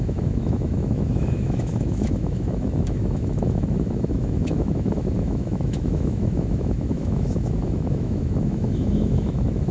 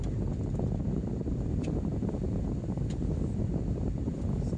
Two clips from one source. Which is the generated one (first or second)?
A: first